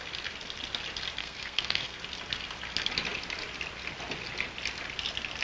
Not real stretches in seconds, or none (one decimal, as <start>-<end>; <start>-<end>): 1.2-2.0